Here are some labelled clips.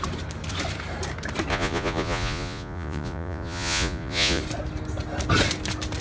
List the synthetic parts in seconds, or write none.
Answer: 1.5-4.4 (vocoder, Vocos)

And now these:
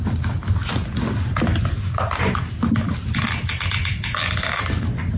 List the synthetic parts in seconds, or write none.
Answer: none

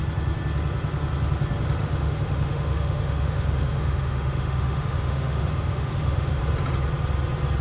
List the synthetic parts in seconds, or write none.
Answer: 1.8-6.4 (autoencoder, DAC-VAE)

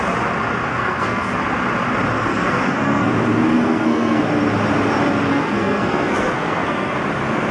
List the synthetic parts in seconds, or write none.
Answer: 0.7-1.4 (codec, SNAC); 2.3-3.1; 3.5-4.2; 5.3-7.0

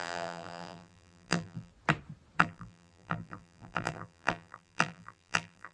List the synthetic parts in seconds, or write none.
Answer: 0.0-1.7 (vocoder, BigVGAN v2); 2.4-5.7

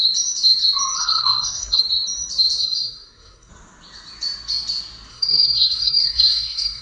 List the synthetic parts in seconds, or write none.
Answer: 1.0-1.8 (codec, SNAC); 2.6-3.5; 5.1-6.8